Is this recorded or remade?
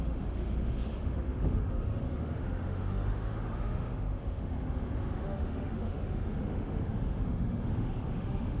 remade